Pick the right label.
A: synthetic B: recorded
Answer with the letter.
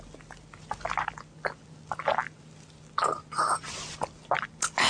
B